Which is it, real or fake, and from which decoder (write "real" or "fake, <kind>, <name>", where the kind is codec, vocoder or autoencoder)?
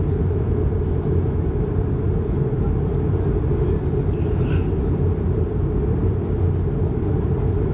fake, vocoder, BigVGAN v2